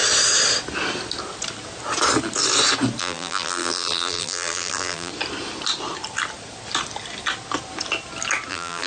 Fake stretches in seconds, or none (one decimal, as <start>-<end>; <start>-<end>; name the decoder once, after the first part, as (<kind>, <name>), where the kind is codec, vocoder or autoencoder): 3.0-5.1 (vocoder, BigVGAN v2); 8.5-8.9